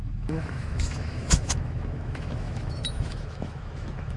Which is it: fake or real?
fake